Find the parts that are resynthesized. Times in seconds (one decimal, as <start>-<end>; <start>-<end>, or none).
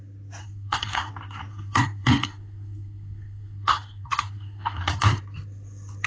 0.4-1.1; 1.5-5.2